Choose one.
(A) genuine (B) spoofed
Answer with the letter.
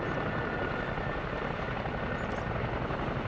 A